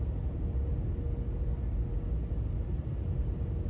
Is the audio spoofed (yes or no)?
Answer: no